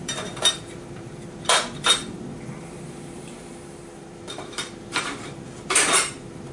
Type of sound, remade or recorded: remade